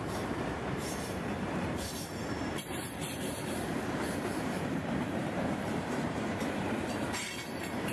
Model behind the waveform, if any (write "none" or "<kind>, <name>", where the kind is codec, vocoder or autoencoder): vocoder, BigVGAN v2